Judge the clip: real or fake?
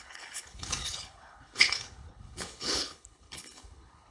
fake